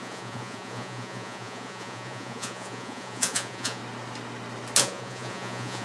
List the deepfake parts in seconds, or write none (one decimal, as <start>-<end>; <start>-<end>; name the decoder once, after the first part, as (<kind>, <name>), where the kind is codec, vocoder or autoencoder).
0.0-3.8 (vocoder, Vocos); 4.8-5.8